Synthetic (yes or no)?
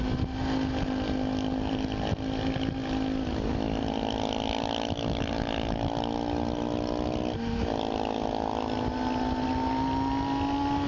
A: no